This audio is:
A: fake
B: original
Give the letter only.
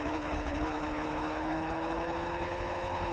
A